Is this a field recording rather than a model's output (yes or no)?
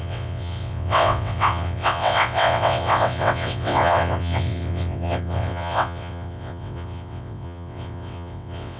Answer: no